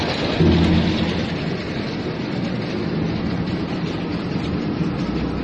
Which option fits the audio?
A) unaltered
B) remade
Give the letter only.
A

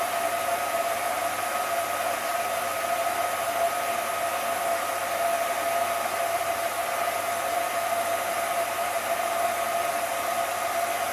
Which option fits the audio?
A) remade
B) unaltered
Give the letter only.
B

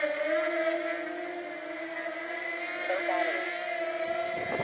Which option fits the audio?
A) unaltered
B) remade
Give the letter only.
A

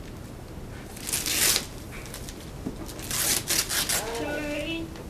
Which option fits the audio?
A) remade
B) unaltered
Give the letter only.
B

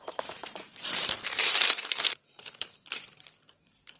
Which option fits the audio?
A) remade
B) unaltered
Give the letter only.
A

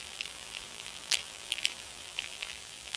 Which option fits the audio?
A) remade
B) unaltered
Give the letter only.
A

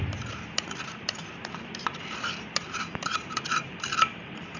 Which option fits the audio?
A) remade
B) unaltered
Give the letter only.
A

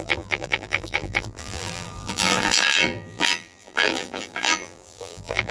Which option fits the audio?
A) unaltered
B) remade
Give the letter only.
B